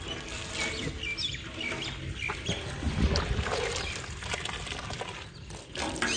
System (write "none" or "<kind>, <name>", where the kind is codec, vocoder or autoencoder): none